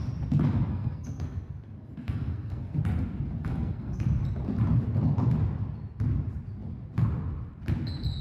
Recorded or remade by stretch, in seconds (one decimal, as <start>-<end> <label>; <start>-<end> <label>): 0.0-0.7 recorded; 0.7-2.8 remade; 2.8-3.4 recorded; 3.4-4.2 remade; 4.2-8.2 recorded